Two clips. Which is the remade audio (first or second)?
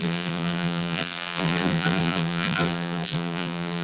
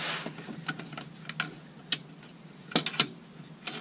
first